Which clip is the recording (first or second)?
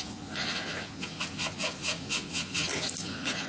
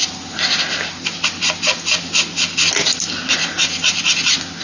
second